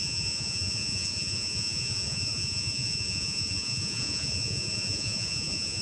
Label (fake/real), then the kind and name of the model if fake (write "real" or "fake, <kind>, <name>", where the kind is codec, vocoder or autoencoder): fake, vocoder, Vocos